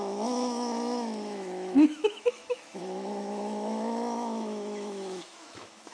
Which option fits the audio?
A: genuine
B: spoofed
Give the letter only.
B